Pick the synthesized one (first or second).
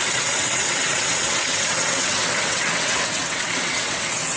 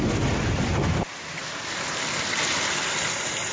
first